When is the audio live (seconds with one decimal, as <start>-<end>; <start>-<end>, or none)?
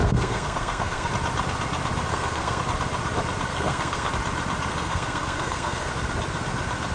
1.1-2.1; 2.6-3.5; 4.1-4.7; 5.9-6.9